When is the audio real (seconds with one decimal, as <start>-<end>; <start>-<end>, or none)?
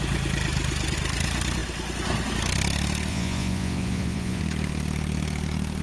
0.0-3.1; 4.4-5.8